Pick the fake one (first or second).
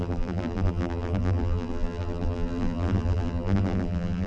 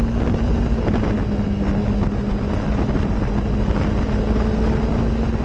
first